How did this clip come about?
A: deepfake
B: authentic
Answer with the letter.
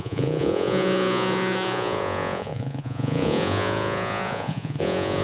A